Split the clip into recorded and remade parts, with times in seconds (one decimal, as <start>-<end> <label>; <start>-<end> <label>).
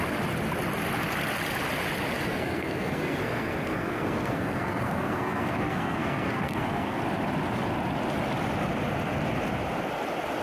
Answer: 0.0-2.3 recorded; 2.3-7.0 remade; 7.0-10.4 recorded